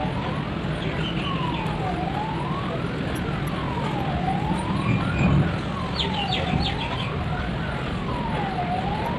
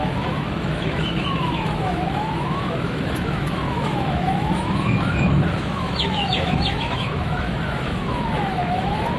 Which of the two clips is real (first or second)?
first